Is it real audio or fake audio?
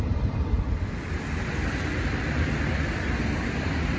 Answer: fake